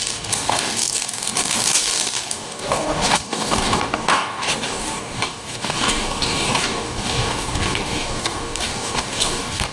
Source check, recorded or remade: remade